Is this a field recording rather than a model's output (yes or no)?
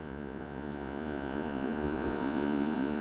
no